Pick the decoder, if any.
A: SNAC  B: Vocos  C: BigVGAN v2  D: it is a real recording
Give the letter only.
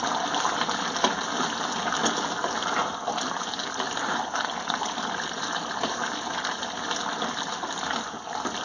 D